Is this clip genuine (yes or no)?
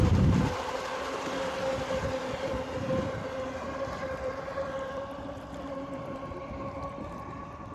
no